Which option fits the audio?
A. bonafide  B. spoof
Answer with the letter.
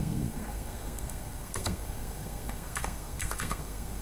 B